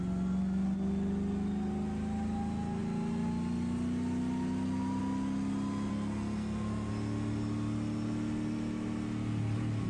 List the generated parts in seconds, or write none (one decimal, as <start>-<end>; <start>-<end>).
5.9-6.9